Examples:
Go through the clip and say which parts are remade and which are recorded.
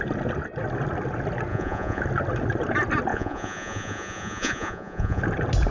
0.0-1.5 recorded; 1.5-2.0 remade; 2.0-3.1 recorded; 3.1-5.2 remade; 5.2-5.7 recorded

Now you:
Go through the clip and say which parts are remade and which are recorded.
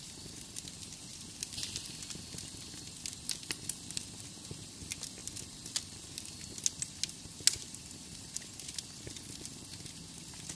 0.0-10.5 recorded